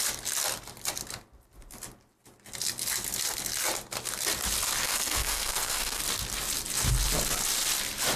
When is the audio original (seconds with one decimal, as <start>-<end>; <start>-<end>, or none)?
0.0-4.8; 6.0-8.2